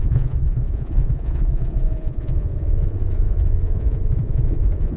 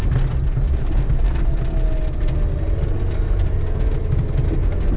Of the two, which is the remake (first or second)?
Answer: first